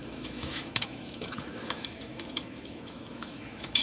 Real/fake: fake